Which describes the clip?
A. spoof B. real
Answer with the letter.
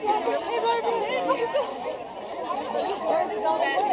B